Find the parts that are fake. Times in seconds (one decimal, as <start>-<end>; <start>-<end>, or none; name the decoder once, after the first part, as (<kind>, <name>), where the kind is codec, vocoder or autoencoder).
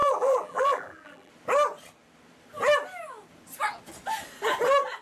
0.0-1.3 (vocoder, BigVGAN v2)